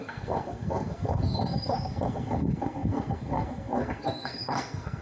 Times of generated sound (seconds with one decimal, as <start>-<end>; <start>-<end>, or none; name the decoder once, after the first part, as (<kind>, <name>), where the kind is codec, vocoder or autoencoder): 0.0-5.0 (codec, SNAC)